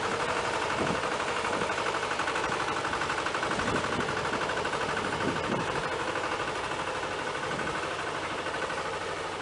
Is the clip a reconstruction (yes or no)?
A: no